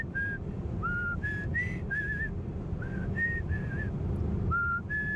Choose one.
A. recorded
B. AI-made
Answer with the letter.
A